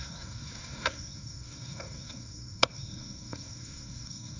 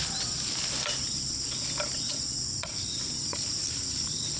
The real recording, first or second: second